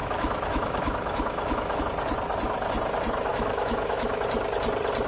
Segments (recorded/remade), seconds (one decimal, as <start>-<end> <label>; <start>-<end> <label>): 0.0-1.8 remade; 1.8-3.3 recorded; 3.3-4.2 remade; 4.2-5.1 recorded